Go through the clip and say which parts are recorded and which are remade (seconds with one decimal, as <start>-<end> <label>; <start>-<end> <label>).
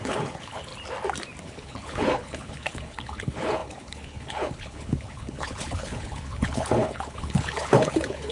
0.0-0.7 remade; 0.7-1.4 recorded; 1.4-8.3 remade